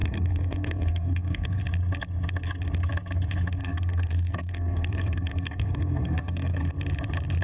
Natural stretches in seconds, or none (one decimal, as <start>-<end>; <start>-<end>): 1.6-3.6; 6.7-7.4